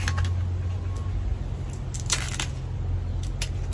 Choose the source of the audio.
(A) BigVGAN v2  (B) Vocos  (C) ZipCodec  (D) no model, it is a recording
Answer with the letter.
D